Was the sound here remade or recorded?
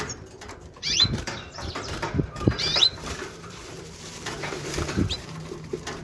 remade